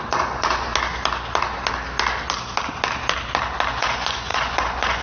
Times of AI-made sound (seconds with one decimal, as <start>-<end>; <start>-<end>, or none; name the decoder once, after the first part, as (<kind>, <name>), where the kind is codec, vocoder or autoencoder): 0.0-0.7 (vocoder, Vocos); 3.7-5.0